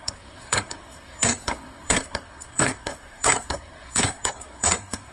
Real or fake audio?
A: fake